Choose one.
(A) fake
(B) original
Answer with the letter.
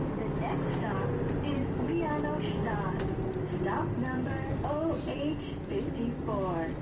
B